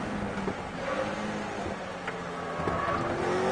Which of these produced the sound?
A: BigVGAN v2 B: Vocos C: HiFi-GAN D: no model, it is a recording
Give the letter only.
D